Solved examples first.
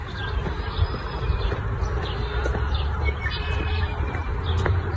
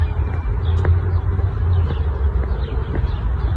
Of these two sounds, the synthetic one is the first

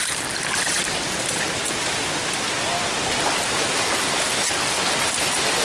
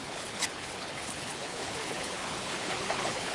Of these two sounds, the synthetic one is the second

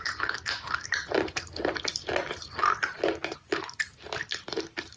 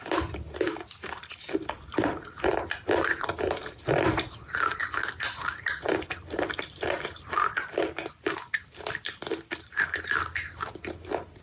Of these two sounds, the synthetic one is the second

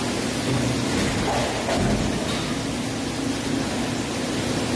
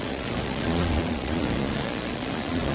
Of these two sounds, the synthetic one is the second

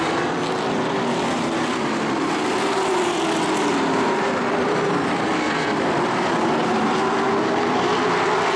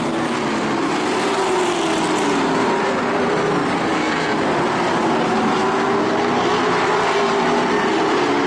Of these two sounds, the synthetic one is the first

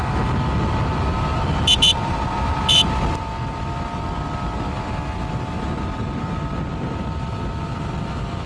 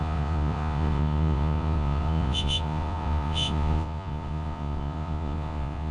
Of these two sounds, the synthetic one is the second